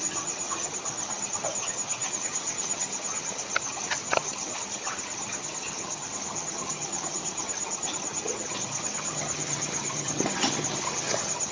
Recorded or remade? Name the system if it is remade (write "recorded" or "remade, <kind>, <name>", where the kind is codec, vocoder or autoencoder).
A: remade, vocoder, HiFi-GAN